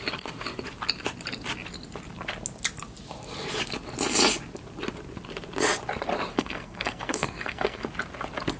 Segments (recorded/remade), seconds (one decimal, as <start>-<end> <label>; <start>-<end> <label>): 0.0-6.3 recorded; 6.3-7.8 remade; 7.8-8.6 recorded